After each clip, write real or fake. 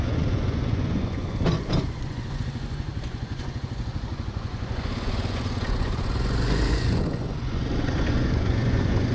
fake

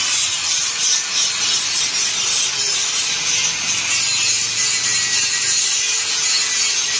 real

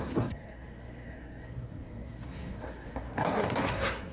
fake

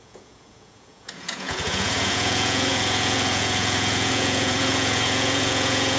fake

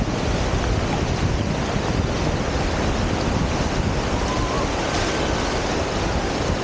real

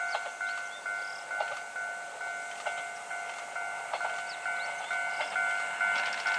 real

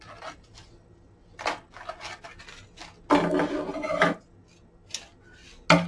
real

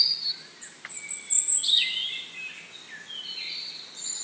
real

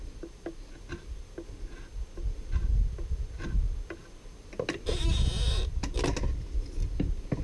real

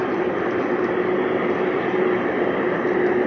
fake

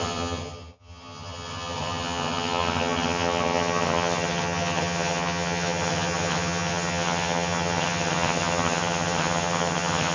fake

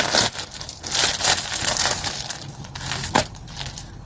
real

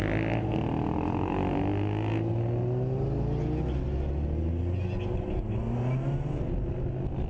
real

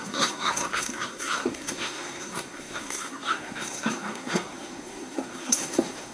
fake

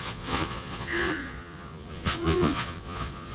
fake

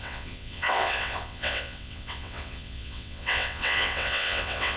fake